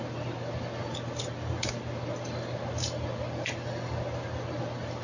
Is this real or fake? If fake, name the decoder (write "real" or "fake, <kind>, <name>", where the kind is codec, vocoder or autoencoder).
real